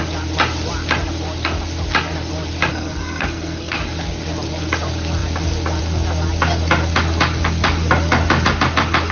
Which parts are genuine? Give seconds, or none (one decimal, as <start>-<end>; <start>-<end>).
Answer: 0.0-2.7; 3.8-9.1